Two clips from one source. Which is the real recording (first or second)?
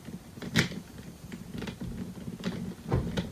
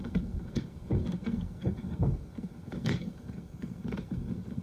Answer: first